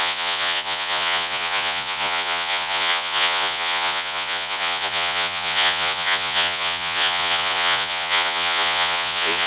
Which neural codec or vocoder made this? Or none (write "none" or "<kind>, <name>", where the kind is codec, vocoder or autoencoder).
vocoder, Vocos